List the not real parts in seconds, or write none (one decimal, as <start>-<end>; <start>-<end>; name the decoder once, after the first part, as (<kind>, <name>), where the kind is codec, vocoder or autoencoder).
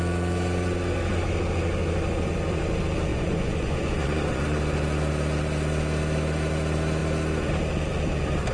3.1-4.6 (vocoder, Vocos)